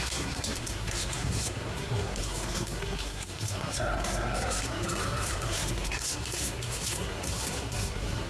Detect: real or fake fake